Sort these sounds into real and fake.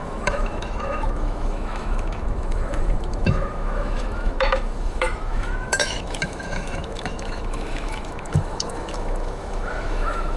fake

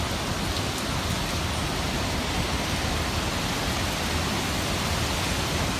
real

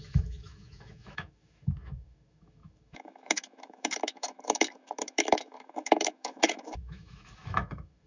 fake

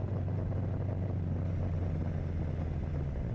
real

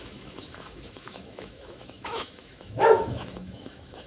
fake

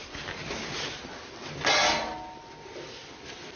real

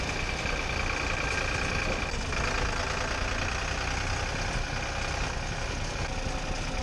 real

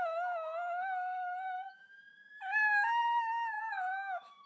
fake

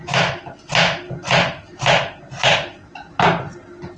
real